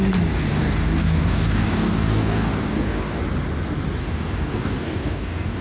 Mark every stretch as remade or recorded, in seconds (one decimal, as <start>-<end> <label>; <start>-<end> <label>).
0.0-0.5 recorded; 0.5-3.2 remade; 3.2-4.0 recorded; 4.0-5.6 remade